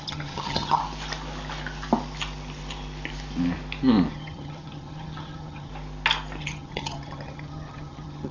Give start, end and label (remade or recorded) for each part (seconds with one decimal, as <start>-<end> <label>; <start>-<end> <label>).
0.0-0.8 remade; 0.8-4.1 recorded; 4.1-5.7 remade; 5.7-6.4 recorded; 6.4-8.3 remade